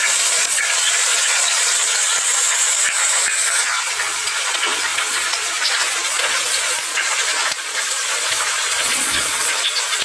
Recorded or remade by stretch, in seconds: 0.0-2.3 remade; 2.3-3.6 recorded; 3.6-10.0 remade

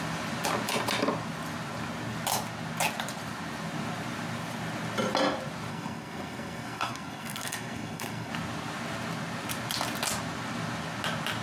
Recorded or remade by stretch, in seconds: 0.0-5.7 recorded; 5.7-8.3 remade; 8.3-11.4 recorded